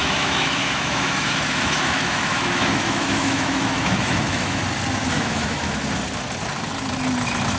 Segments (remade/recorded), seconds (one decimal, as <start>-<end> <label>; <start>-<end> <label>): 0.0-4.6 remade; 4.6-5.0 recorded; 5.0-5.8 remade; 5.8-7.6 recorded